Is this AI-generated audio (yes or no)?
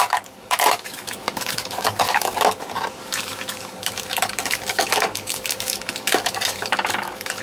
yes